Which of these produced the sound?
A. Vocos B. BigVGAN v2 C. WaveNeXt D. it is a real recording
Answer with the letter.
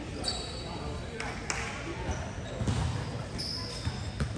D